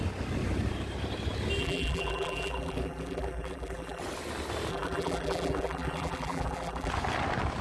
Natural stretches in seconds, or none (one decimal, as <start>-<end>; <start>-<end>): 0.0-1.6; 4.0-4.7; 6.9-7.6